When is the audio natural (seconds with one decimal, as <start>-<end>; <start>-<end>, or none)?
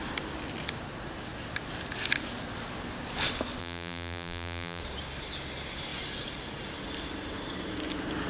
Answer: 0.0-3.6; 4.8-8.3